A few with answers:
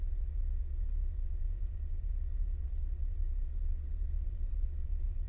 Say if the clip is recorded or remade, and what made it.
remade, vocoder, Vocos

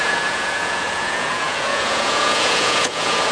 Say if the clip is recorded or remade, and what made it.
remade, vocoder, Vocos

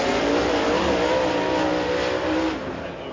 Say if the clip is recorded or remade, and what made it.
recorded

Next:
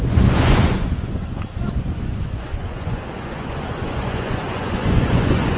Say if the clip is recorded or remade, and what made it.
remade, vocoder, Vocos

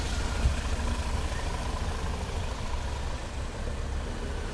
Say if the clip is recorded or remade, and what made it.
recorded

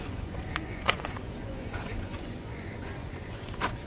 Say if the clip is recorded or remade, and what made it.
remade, vocoder, Vocos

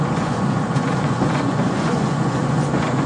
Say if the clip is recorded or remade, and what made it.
remade, vocoder, Vocos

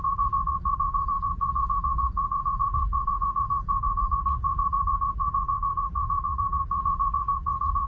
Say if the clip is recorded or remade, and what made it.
remade, vocoder, Vocos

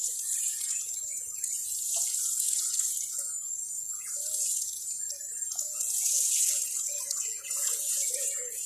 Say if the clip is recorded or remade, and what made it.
remade, vocoder, Vocos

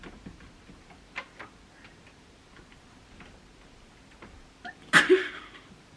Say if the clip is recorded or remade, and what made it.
recorded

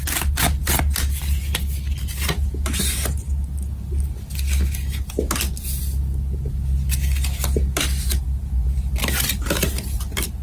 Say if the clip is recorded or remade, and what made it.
recorded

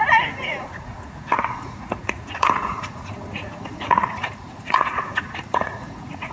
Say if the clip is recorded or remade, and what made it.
remade, vocoder, Vocos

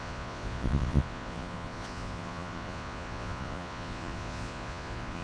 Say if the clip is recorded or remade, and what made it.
remade, vocoder, Vocos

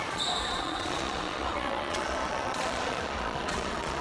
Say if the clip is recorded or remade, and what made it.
remade, vocoder, Vocos